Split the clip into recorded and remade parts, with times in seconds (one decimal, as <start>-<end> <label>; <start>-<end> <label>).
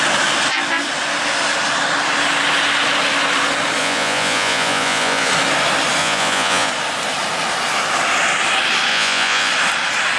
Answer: 0.0-3.8 recorded; 3.8-5.3 remade; 5.3-6.0 recorded; 6.0-6.7 remade; 6.7-8.9 recorded; 8.9-9.5 remade; 9.5-10.2 recorded